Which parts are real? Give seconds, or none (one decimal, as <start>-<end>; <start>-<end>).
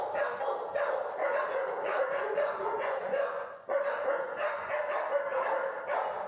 0.0-1.2; 4.8-6.3